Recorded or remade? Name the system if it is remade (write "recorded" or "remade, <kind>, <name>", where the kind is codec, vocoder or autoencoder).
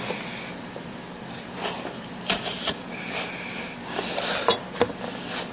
recorded